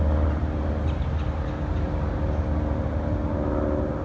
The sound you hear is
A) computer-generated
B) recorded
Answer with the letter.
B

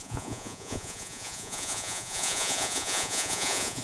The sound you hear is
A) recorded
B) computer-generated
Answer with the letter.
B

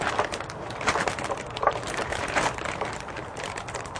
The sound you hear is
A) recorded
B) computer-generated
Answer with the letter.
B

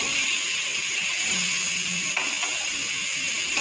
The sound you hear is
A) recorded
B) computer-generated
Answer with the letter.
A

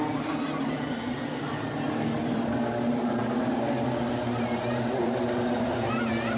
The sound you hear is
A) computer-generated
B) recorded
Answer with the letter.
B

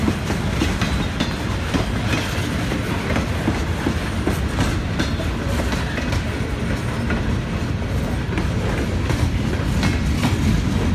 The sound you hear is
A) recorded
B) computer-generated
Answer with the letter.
A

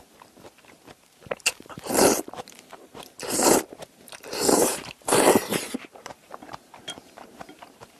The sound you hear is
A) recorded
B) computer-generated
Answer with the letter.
B